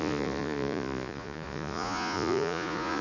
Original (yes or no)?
no